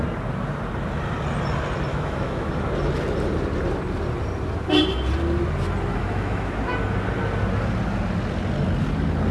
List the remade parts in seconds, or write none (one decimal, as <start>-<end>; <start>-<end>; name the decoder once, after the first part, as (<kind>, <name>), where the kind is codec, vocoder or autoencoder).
1.9-2.5 (autoencoder, DAC-VAE); 5.9-6.5